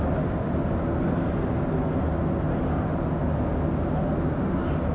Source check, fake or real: real